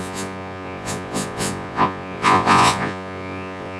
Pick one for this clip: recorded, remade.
remade